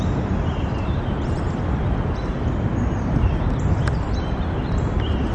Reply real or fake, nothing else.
real